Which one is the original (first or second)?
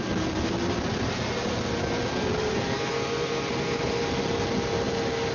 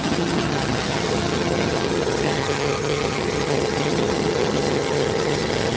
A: first